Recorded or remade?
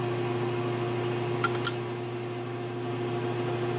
recorded